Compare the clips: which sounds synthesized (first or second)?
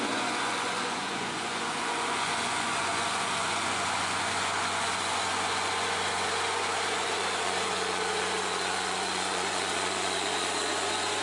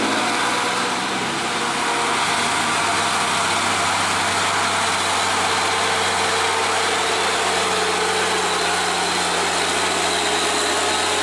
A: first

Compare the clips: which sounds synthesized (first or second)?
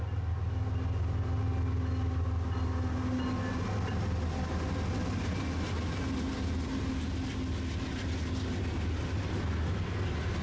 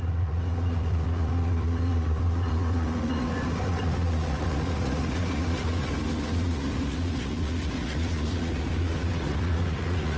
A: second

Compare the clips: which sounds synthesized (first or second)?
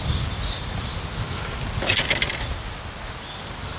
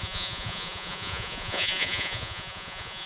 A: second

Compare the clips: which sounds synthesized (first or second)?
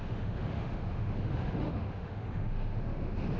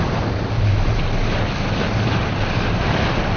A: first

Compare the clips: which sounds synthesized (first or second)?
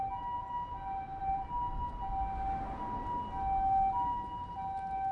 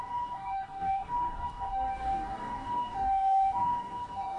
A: second